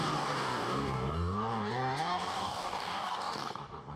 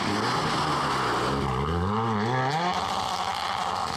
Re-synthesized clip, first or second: first